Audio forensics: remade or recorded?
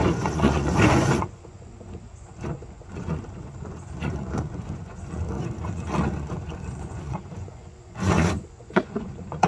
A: remade